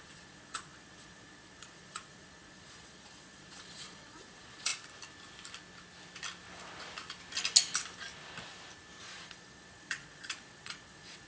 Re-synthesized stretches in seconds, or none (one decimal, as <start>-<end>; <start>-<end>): 0.0-4.7; 9.0-11.3